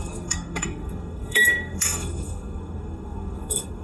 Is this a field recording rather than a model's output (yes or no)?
no